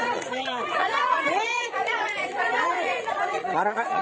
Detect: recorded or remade remade